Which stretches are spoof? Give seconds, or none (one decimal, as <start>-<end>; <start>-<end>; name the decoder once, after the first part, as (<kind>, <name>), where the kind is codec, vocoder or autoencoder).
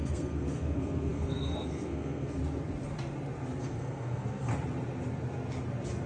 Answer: 0.0-2.4 (codec, SNAC); 3.6-4.5